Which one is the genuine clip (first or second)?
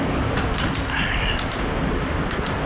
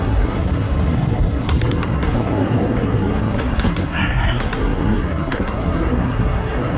first